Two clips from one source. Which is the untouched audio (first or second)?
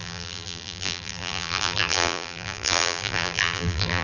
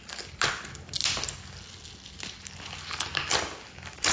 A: second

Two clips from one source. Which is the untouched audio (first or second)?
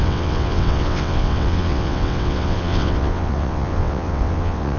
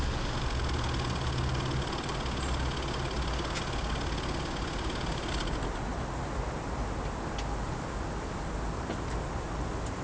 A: second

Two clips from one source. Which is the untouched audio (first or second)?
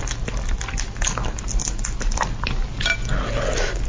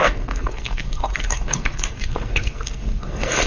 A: first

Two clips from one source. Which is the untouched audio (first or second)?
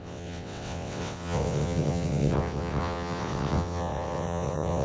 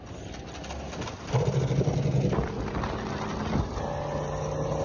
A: second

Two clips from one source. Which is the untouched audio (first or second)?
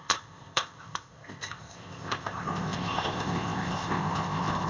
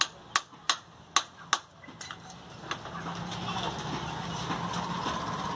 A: second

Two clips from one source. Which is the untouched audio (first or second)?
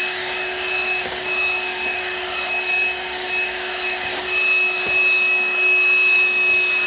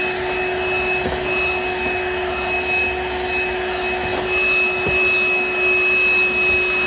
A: second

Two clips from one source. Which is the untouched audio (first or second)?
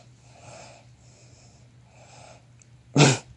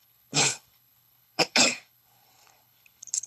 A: first